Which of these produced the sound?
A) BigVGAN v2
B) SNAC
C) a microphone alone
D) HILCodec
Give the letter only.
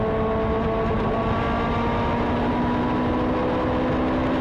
C